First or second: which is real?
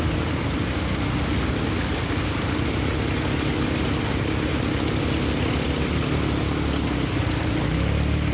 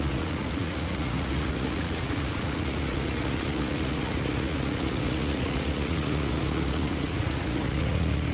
first